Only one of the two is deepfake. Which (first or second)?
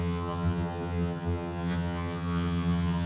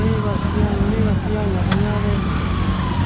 first